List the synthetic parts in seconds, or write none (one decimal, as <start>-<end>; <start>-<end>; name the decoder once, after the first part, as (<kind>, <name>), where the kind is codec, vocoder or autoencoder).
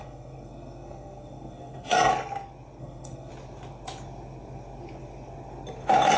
0.0-2.1 (codec, SNAC); 2.8-3.3